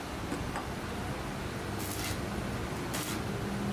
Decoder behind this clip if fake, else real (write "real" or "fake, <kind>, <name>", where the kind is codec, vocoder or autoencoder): real